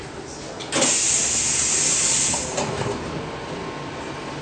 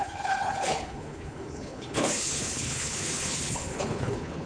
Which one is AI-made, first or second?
second